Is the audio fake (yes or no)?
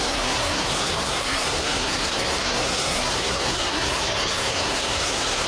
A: yes